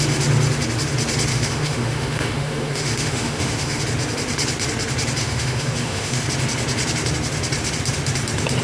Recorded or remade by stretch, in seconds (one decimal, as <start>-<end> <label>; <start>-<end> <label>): 0.0-1.3 recorded; 1.3-3.8 remade; 3.8-5.2 recorded; 5.2-6.2 remade; 6.2-8.6 recorded